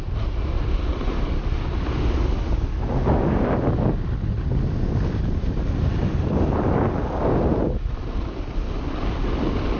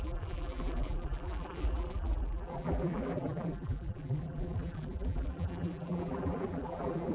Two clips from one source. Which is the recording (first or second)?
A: first